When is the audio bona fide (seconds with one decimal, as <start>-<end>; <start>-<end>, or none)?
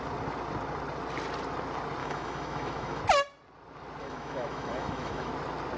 0.0-2.0; 3.0-4.0; 5.3-5.8